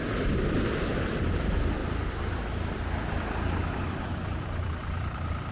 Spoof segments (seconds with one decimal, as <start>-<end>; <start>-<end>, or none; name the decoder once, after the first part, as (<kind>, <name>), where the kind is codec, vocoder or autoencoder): 0.0-1.8 (vocoder, BigVGAN v2); 3.7-5.5